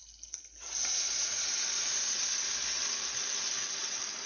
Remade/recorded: recorded